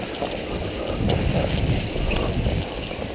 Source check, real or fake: fake